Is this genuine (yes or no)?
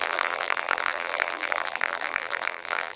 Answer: no